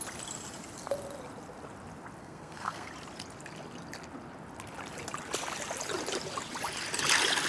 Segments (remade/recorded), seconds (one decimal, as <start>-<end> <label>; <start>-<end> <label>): 0.0-2.2 recorded; 2.2-2.9 remade; 2.9-7.5 recorded